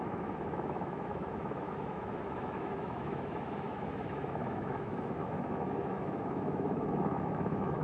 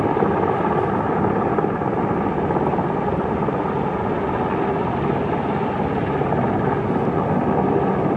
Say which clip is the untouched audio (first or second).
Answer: second